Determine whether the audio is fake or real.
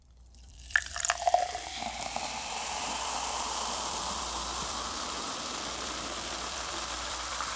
fake